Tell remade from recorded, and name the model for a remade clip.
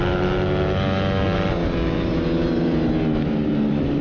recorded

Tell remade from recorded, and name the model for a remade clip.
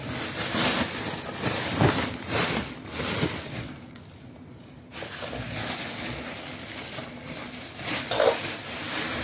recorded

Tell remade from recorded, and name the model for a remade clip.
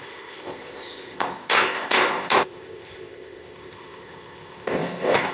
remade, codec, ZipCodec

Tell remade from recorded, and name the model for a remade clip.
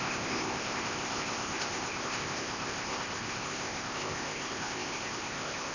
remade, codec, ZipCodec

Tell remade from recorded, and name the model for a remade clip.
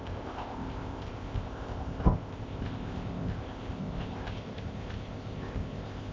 remade, codec, ZipCodec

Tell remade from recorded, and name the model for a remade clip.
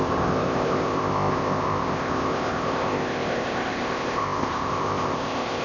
remade, codec, ZipCodec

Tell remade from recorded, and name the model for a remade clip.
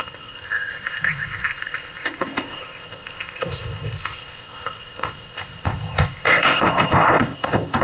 remade, codec, ZipCodec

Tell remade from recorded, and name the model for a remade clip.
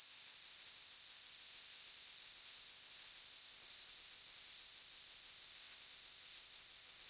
remade, codec, ZipCodec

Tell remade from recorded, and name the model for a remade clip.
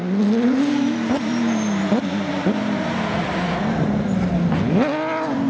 recorded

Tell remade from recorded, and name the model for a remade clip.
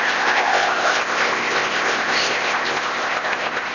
remade, codec, ZipCodec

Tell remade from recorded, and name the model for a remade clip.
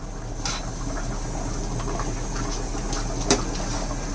recorded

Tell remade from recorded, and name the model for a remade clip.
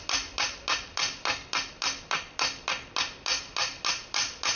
recorded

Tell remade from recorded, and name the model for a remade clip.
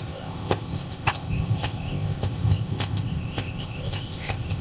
remade, codec, ZipCodec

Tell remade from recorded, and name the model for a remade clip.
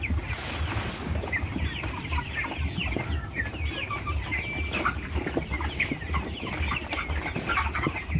recorded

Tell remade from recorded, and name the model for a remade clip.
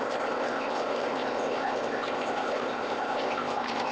remade, codec, ZipCodec